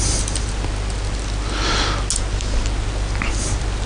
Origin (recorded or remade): recorded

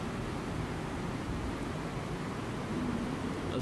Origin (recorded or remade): recorded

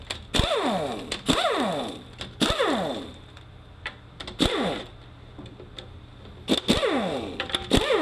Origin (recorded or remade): recorded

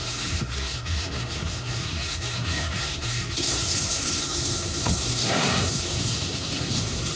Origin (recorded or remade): remade